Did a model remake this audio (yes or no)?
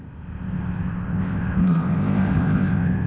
yes